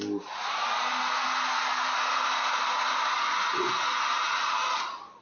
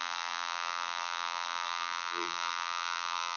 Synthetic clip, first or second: second